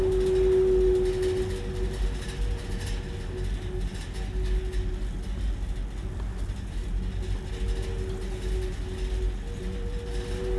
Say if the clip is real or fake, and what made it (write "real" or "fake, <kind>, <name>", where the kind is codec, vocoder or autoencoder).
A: real